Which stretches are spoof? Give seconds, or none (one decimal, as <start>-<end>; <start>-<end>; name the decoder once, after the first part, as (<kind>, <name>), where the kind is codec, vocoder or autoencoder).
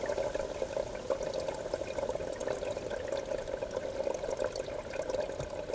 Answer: none